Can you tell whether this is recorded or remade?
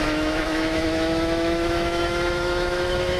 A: remade